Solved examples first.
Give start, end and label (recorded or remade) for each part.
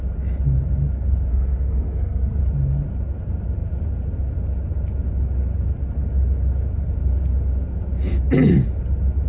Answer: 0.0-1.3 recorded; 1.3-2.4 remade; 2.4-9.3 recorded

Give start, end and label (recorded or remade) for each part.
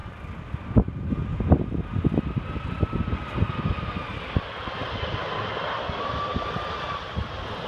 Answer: 0.0-7.7 recorded